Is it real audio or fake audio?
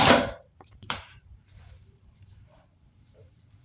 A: fake